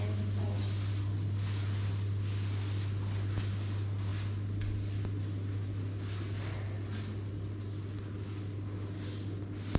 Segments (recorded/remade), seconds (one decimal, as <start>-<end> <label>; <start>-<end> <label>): 0.0-9.8 recorded